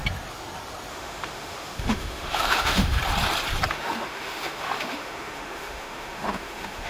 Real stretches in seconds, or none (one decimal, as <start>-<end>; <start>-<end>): 0.0-0.9; 3.0-3.7